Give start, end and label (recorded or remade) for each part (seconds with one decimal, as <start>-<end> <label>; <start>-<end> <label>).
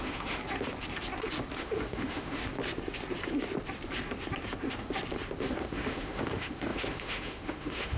0.0-0.4 remade; 0.4-1.6 recorded; 1.6-2.4 remade; 2.4-5.5 recorded; 5.5-8.0 remade